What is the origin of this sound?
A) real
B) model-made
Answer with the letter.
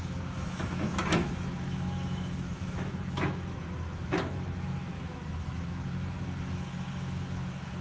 B